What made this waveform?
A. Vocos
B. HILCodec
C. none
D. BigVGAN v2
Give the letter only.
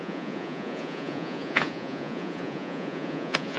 A